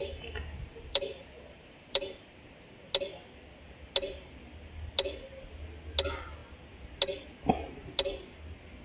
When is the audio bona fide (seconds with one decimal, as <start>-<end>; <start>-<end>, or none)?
0.0-0.7; 2.7-8.8